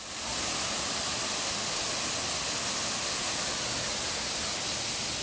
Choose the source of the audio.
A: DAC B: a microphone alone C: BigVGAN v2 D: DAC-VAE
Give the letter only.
B